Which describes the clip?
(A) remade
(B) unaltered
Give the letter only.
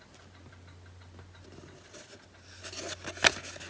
B